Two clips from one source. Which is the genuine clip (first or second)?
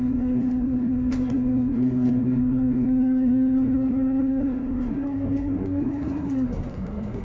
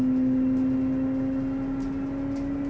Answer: second